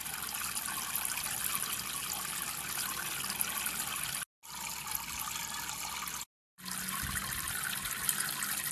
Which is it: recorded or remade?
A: recorded